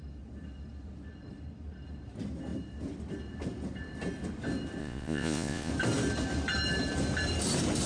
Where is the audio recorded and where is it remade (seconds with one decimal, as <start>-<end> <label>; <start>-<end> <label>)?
0.0-4.8 recorded; 4.8-5.7 remade; 5.7-7.9 recorded